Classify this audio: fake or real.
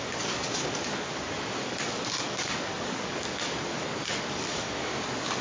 fake